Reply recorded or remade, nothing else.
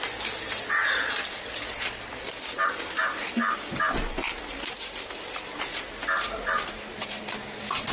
recorded